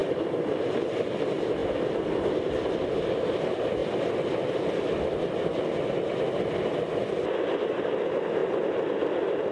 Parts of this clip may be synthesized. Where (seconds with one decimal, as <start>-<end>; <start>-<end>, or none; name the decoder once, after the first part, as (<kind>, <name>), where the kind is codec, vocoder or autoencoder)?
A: 0.0-1.2 (vocoder, BigVGAN v2); 3.8-4.8